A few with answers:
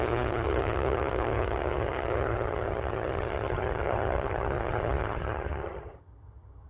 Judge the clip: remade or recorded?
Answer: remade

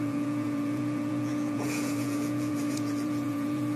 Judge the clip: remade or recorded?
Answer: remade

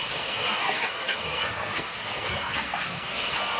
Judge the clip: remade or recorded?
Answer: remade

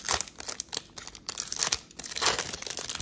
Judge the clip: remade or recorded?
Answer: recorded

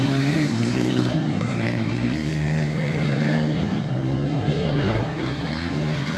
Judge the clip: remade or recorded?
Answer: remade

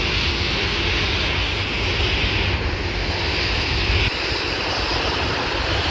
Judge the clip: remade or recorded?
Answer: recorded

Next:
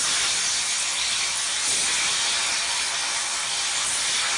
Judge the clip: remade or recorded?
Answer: recorded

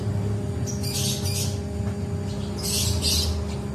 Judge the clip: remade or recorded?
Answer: recorded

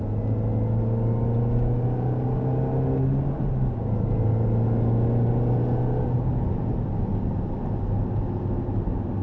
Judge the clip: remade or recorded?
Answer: recorded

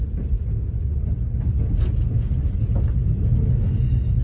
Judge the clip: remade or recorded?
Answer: recorded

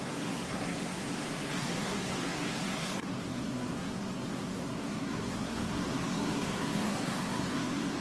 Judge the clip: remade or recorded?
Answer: remade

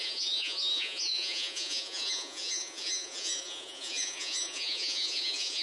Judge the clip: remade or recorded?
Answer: remade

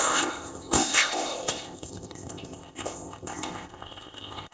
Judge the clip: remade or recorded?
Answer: remade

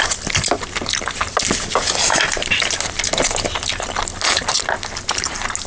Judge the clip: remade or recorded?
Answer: recorded